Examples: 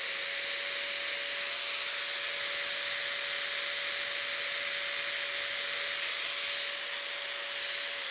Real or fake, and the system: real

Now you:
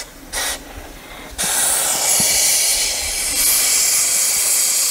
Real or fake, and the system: real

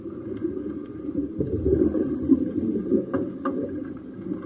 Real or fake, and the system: real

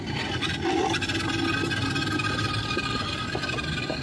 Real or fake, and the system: real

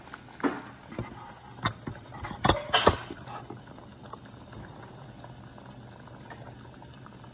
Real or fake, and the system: real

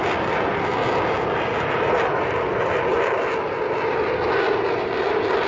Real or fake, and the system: real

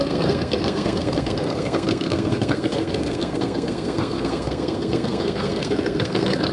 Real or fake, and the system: fake, codec, SNAC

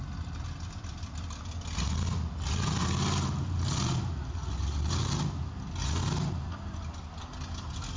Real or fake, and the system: real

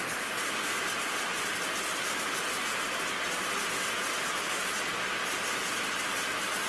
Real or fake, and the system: real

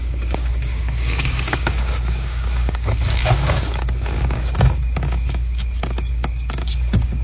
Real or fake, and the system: fake, codec, DAC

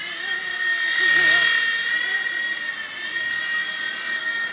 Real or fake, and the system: real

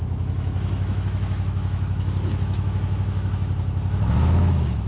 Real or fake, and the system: fake, autoencoder, DAC-VAE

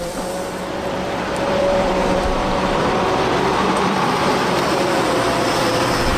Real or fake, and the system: fake, vocoder, BigVGAN v2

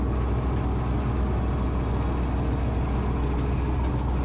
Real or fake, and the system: real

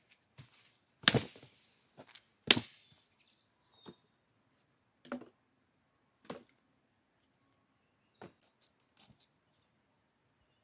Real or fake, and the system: real